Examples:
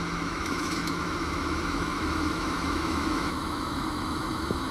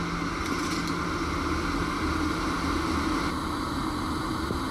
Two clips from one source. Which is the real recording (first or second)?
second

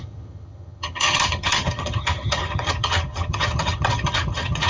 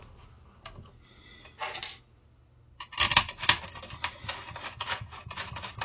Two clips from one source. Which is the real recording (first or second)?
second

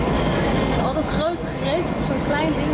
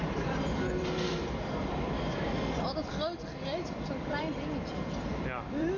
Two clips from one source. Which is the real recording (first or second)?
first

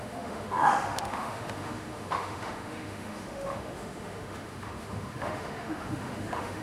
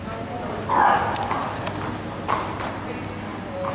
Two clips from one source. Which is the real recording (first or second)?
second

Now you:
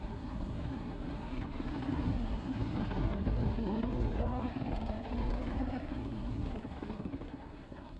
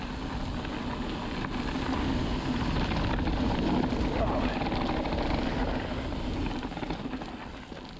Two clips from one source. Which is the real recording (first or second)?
second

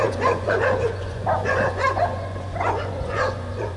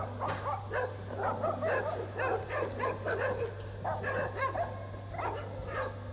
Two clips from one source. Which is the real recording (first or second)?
second